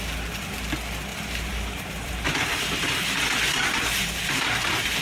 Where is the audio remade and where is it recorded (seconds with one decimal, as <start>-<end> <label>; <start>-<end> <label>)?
0.0-1.1 recorded; 1.1-2.8 remade; 2.8-5.0 recorded